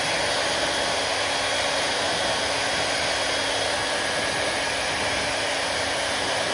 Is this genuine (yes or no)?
yes